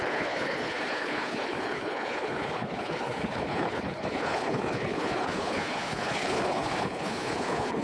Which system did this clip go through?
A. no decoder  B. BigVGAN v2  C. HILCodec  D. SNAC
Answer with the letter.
C